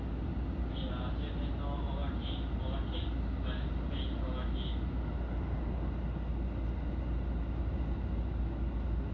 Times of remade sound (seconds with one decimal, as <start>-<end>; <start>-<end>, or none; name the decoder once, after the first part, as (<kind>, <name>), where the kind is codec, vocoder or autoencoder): none